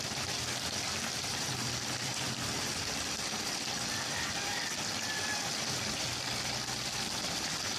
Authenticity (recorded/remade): remade